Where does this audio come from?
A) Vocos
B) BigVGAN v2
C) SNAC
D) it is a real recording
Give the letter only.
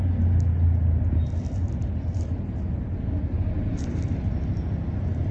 D